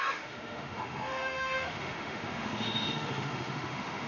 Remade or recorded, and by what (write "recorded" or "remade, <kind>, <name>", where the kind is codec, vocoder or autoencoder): remade, autoencoder, DAC-VAE